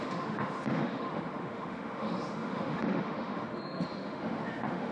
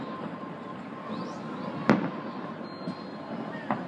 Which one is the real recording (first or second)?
second